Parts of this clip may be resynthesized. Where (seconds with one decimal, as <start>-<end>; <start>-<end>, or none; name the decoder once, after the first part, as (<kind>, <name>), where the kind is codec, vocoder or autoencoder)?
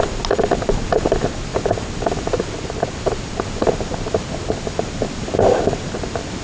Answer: none